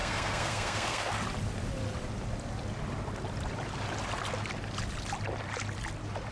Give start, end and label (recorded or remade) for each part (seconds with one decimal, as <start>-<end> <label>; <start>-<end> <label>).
0.0-1.1 remade; 1.1-6.3 recorded